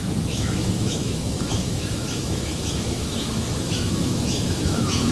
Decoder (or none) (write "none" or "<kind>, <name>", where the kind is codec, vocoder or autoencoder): autoencoder, DAC-VAE